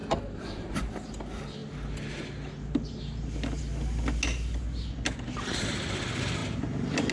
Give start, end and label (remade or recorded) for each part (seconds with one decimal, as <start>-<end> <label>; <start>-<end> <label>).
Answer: 0.0-0.7 remade; 0.7-7.1 recorded